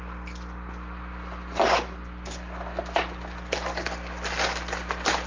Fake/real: real